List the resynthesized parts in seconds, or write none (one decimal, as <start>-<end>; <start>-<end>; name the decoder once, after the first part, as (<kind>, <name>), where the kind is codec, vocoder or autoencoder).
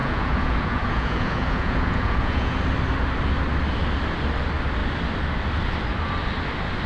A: 0.0-2.6 (vocoder, Vocos)